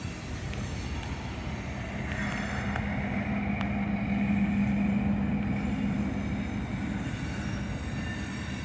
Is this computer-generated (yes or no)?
no